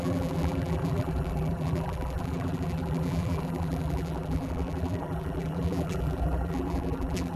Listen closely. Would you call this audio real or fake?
fake